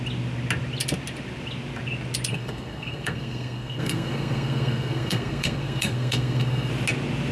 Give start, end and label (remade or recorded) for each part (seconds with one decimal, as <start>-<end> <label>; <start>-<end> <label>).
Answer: 0.0-2.3 recorded; 2.3-6.7 remade; 6.7-7.3 recorded